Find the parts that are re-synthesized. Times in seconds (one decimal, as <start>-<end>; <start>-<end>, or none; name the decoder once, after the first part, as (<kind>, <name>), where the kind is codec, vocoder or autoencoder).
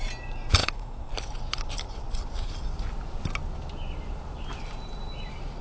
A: 0.6-1.1 (autoencoder, DAC-VAE)